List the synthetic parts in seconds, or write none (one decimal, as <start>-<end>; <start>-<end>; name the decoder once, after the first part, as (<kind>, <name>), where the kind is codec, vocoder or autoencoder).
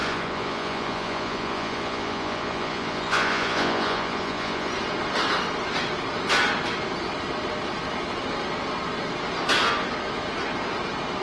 0.0-4.7 (vocoder, Vocos)